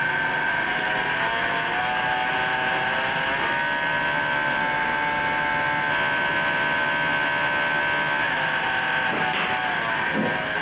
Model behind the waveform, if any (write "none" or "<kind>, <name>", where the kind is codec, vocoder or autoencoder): none